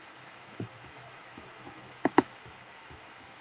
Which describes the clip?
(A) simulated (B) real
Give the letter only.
A